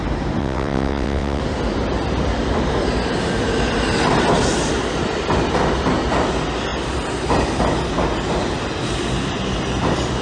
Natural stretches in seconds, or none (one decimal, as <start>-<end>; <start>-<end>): 0.0-0.4; 1.4-10.2

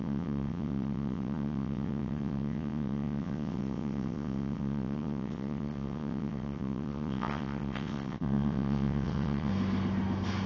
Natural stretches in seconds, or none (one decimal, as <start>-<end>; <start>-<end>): 9.5-10.5